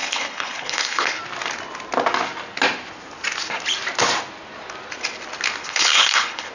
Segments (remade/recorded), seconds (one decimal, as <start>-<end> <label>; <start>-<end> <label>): 0.0-1.2 remade; 1.2-5.6 recorded; 5.6-6.5 remade